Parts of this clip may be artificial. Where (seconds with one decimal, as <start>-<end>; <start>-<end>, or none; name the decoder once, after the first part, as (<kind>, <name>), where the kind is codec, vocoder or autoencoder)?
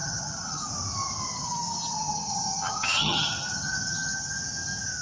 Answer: 0.0-0.7 (vocoder, HiFi-GAN); 1.4-4.4